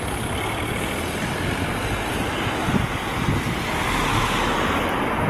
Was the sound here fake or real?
real